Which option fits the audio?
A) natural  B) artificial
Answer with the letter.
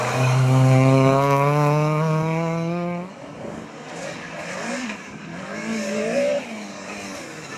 B